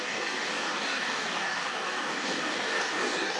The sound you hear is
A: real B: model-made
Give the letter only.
B